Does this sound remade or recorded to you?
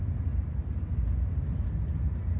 recorded